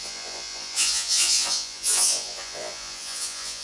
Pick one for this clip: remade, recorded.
remade